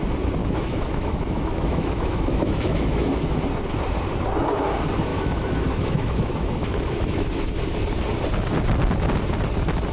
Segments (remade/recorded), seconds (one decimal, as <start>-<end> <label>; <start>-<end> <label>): 0.0-0.4 recorded; 0.4-3.2 remade; 3.2-5.1 recorded; 5.1-7.5 remade; 7.5-9.9 recorded